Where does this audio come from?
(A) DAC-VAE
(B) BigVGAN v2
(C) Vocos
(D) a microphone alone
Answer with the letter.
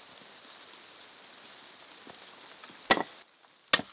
D